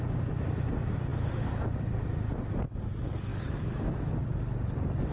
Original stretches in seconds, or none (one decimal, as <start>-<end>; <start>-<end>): 0.0-3.3; 4.1-5.1